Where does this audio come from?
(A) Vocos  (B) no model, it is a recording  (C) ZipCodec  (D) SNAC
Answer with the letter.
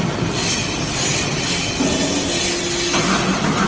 B